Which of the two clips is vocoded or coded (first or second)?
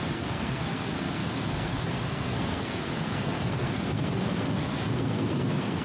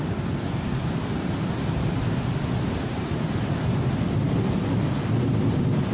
first